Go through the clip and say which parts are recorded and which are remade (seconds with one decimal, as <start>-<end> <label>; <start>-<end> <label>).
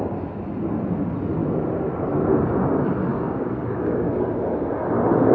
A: 0.0-3.1 recorded; 3.1-4.2 remade; 4.2-5.3 recorded